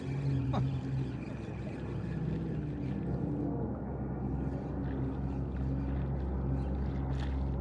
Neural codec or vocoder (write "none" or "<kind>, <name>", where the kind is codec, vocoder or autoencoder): none